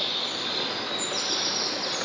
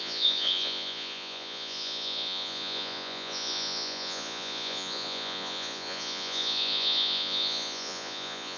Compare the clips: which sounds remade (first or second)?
second